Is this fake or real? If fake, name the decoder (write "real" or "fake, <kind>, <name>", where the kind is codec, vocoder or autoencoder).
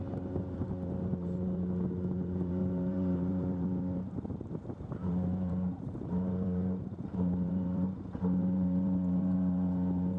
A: fake, vocoder, BigVGAN v2